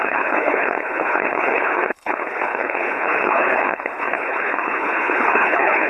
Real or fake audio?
fake